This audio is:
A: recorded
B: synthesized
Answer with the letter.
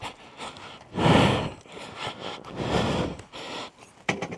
A